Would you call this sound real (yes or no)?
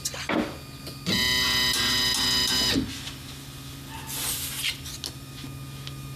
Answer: yes